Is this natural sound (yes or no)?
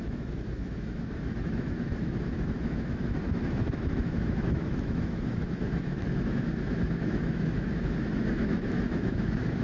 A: no